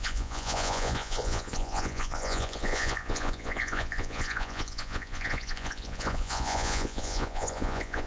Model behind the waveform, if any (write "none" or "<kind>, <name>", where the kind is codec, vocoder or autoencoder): vocoder, Vocos